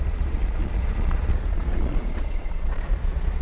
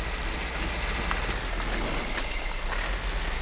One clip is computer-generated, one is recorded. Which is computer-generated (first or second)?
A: first